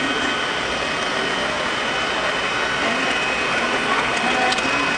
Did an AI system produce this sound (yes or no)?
no